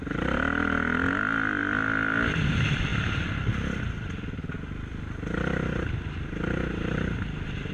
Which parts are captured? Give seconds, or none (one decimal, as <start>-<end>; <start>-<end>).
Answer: 0.0-2.9